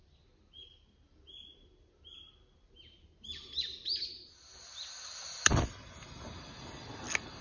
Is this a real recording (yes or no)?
yes